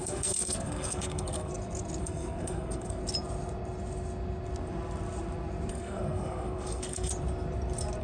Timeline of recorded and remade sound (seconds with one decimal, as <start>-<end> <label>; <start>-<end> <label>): 0.0-1.5 remade; 1.5-2.0 recorded; 2.0-3.0 remade; 3.0-5.7 recorded; 5.7-7.1 remade; 7.1-8.0 recorded